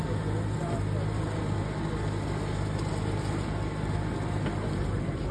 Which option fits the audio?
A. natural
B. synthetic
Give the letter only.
A